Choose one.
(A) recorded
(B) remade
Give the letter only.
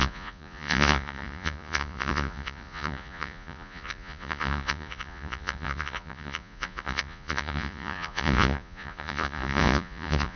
B